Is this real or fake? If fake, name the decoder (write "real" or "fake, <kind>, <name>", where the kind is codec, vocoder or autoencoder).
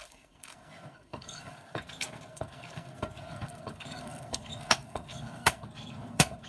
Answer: fake, codec, SNAC